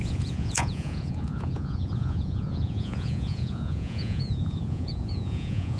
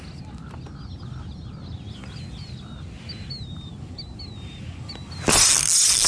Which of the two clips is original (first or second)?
second